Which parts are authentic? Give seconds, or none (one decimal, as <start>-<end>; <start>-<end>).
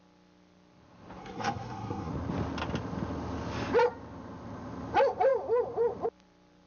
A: 0.0-1.2; 2.1-6.7